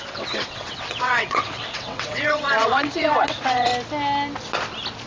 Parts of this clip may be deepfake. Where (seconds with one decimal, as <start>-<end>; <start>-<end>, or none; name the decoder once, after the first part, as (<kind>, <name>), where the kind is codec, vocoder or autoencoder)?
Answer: 0.0-3.7 (vocoder, WaveNeXt)